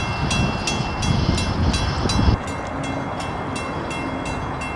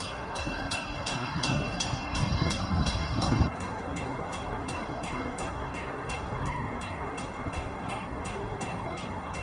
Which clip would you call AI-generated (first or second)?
second